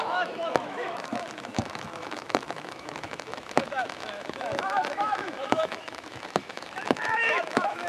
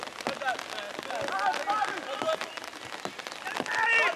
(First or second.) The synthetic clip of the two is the first